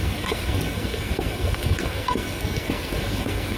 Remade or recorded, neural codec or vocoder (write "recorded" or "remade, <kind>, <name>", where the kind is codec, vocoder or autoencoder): remade, codec, SNAC